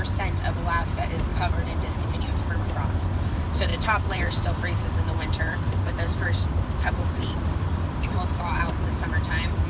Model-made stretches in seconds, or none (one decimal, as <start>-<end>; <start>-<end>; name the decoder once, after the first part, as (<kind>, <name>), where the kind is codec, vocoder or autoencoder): 1.3-2.1 (vocoder, BigVGAN v2); 3.7-8.6